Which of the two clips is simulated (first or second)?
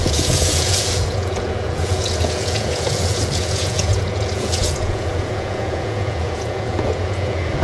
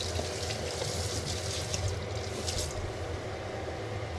first